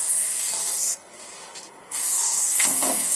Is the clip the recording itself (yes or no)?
no